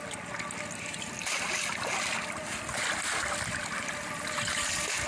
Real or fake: real